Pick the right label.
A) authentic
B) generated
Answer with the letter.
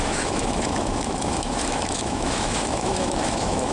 B